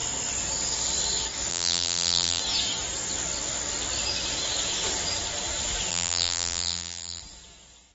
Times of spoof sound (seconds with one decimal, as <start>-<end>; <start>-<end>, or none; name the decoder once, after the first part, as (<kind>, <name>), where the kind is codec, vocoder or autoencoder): 1.5-2.4 (vocoder, BigVGAN v2); 5.9-7.2